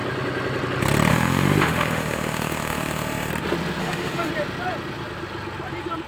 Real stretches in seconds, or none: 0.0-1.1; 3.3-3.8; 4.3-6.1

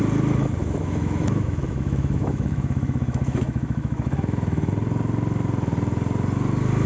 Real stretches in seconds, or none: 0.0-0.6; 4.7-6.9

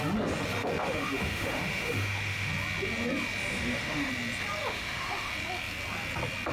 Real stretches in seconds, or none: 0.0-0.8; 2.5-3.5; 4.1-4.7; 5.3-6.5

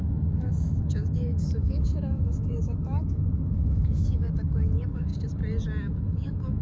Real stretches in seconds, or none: 5.1-6.0

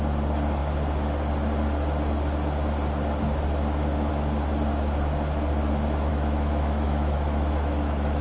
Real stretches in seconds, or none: 0.0-6.1

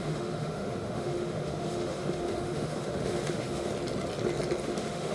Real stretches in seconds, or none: 3.7-4.6

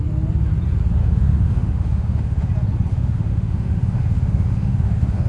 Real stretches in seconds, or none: 0.0-1.0; 2.5-2.9